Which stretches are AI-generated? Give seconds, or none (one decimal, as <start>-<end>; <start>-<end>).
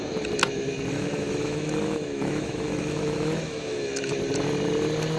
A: 0.9-4.0